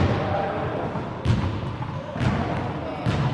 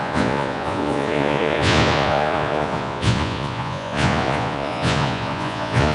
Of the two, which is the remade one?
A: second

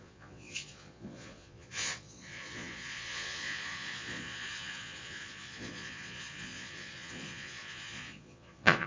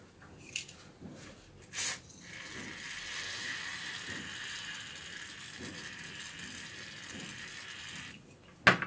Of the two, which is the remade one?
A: first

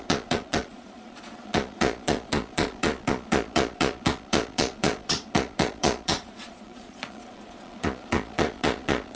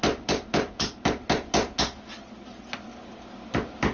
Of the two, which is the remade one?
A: first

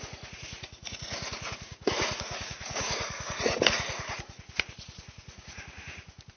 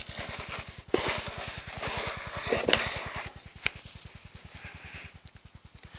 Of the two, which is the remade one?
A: first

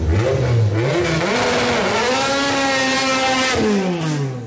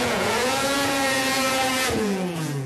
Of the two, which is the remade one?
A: second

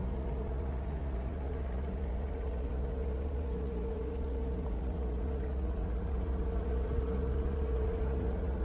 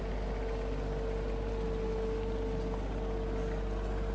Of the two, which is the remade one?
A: first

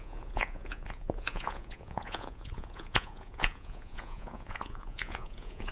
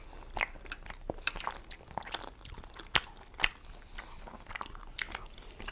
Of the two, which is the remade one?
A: first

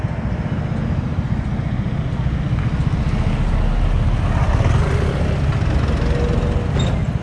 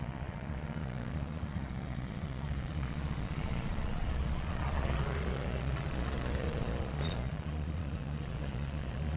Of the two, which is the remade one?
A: second